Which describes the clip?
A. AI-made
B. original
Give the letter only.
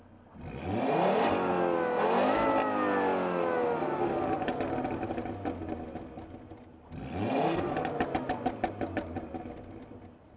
B